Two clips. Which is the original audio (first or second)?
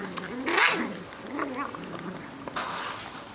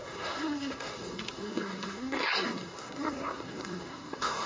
first